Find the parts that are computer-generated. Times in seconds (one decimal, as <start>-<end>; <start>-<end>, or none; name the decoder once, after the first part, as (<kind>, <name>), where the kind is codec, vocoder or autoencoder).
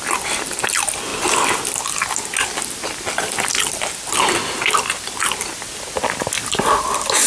none